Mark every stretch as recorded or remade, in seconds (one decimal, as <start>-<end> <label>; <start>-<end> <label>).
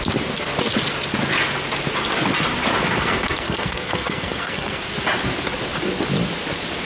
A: 0.0-2.8 recorded; 2.8-4.8 remade; 4.8-6.8 recorded